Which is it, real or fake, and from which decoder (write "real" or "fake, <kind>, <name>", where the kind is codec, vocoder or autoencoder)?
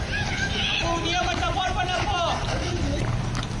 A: real